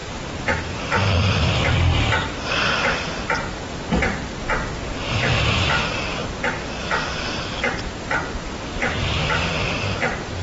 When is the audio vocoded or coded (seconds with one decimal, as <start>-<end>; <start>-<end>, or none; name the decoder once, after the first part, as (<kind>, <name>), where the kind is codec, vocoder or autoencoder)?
0.0-0.6 (vocoder, BigVGAN v2); 4.9-5.4